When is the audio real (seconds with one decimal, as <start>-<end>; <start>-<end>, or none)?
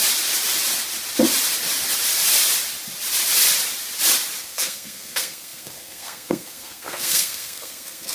0.0-4.4